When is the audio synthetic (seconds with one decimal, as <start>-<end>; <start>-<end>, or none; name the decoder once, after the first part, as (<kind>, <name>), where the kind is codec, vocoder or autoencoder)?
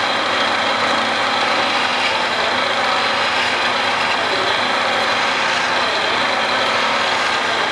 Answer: none